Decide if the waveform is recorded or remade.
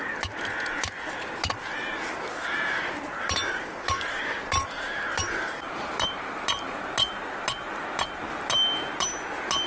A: recorded